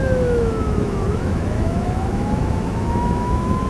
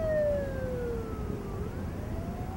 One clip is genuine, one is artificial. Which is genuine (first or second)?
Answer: second